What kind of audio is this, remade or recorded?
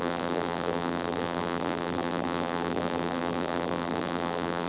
remade